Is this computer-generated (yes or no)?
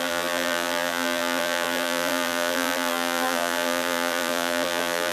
yes